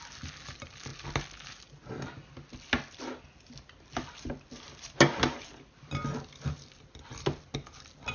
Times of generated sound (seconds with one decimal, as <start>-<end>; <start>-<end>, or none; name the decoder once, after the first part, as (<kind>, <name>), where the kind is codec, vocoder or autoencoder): none